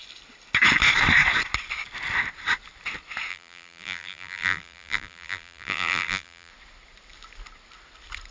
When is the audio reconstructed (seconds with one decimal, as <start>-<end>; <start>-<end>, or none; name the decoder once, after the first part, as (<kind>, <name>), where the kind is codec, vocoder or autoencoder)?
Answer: 3.3-6.5 (vocoder, BigVGAN v2)